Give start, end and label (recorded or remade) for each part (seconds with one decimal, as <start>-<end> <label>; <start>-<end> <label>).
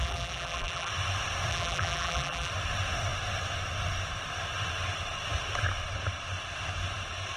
0.0-0.9 remade; 0.9-1.5 recorded; 1.5-2.5 remade; 2.5-7.4 recorded